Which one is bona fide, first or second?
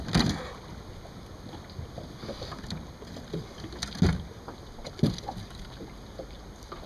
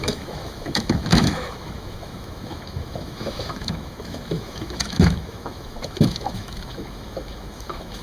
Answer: first